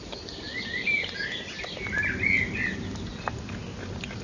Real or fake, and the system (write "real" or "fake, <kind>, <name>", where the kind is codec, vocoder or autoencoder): real